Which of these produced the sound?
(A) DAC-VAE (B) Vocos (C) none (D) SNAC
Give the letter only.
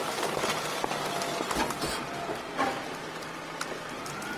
C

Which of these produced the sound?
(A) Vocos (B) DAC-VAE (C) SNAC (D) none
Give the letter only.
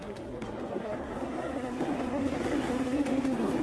C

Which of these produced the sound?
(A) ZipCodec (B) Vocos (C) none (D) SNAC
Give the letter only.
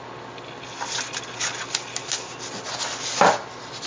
C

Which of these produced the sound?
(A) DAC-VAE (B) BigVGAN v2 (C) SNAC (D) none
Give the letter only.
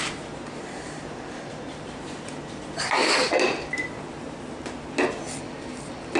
D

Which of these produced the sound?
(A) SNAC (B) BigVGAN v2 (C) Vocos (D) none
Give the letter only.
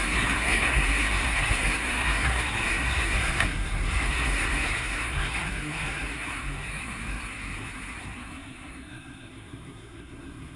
A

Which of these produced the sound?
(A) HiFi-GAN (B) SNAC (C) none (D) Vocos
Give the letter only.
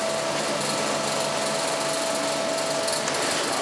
C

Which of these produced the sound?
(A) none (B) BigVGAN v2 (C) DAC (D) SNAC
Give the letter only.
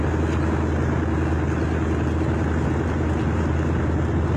A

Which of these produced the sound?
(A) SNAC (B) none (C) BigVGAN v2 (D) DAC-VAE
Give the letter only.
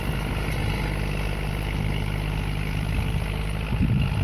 B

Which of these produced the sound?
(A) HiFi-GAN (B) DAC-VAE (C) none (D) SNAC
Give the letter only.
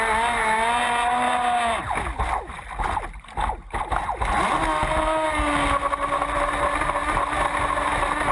C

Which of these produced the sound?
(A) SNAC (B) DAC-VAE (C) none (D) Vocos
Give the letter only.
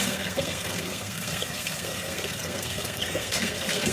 A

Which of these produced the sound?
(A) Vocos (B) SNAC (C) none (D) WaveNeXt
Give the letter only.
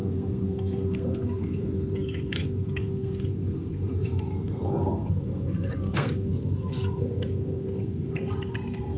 B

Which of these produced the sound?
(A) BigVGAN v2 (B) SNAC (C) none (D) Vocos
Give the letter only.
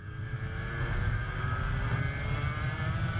C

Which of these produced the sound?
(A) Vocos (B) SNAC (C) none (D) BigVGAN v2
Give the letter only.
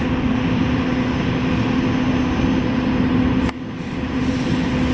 C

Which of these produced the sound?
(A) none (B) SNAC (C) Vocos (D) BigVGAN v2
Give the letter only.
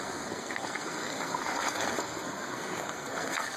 B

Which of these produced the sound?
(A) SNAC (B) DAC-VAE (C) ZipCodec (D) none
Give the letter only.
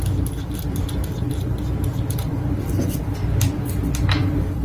D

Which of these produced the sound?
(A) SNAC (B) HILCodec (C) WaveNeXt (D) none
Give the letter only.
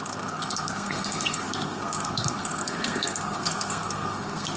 A